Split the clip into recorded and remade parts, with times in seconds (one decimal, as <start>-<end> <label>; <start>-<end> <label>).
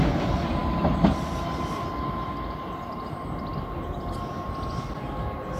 0.0-5.6 recorded